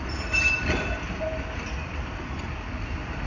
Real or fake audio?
real